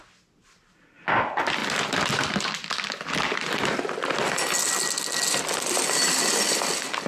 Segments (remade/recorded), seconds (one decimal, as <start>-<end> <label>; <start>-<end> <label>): 0.0-7.1 recorded